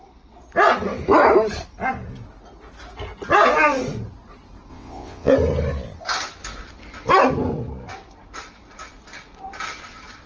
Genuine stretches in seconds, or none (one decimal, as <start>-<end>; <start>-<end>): 0.0-4.7; 5.3-10.3